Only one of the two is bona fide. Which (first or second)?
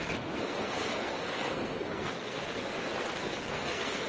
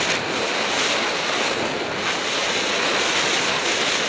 second